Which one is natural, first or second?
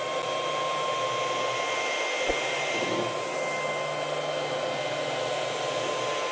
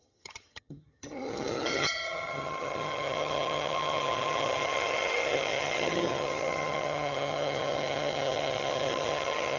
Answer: first